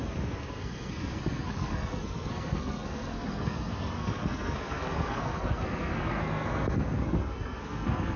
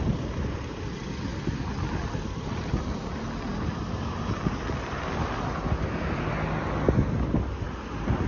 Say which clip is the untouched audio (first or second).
second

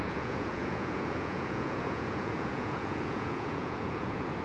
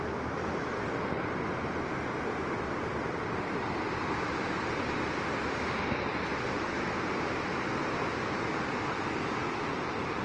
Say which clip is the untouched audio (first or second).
second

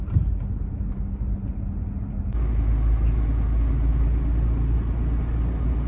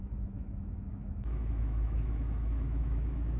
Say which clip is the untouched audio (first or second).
first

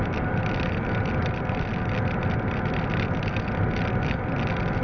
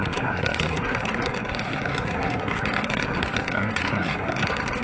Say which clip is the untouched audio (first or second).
first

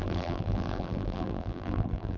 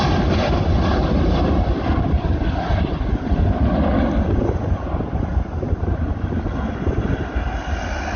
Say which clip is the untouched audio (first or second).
second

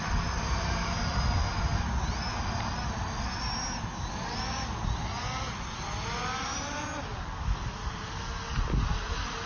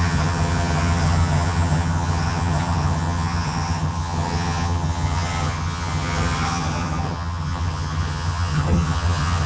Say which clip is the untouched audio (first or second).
first